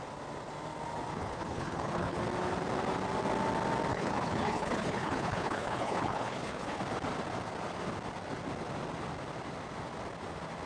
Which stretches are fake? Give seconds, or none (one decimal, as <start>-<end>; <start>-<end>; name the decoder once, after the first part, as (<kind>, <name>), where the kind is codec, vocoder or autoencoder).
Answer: 1.1-2.2 (codec, HILCodec); 3.9-6.8